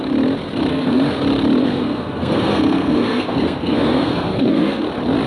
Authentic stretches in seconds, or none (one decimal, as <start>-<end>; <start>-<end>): 0.0-0.7; 1.2-1.6; 4.8-5.3